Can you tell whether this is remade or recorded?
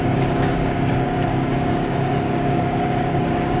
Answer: remade